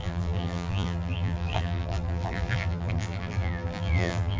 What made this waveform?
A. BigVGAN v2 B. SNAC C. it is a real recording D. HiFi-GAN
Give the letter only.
A